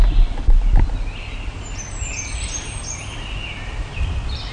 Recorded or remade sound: recorded